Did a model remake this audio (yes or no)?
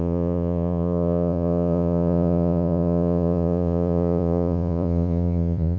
yes